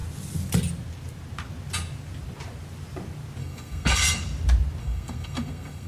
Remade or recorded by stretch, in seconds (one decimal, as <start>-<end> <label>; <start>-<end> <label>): 0.0-3.4 recorded; 3.4-4.2 remade; 4.2-4.8 recorded; 4.8-5.9 remade